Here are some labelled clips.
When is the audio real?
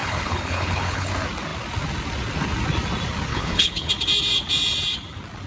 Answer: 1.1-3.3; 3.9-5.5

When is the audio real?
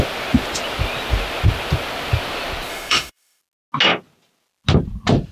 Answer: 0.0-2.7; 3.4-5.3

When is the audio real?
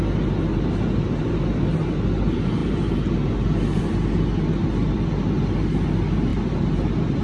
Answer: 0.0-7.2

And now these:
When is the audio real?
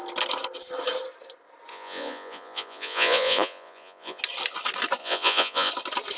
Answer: 0.0-1.7; 4.2-5.0; 5.7-6.2